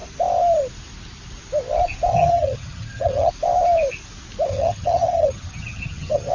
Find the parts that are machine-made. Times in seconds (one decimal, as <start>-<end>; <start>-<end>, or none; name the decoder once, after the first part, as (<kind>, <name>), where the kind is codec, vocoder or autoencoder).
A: 2.1-3.3 (vocoder, HiFi-GAN); 4.5-6.3